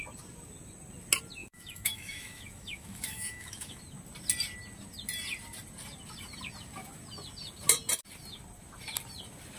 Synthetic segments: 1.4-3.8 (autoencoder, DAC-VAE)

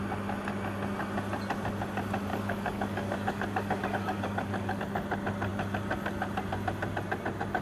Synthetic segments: 2.3-4.8 (codec, DAC)